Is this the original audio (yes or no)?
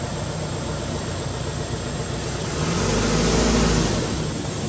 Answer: yes